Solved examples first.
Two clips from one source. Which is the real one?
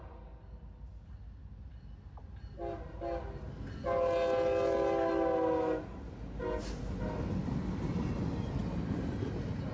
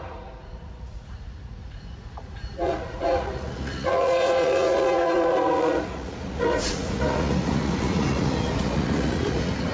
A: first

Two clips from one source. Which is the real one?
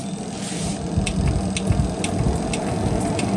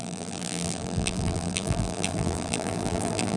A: first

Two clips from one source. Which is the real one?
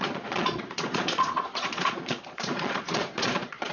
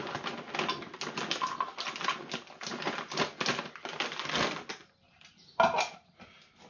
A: second